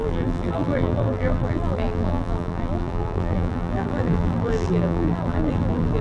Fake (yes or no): yes